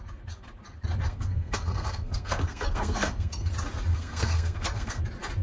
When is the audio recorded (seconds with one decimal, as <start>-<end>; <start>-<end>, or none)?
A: 0.0-1.1; 3.5-3.9; 5.0-5.4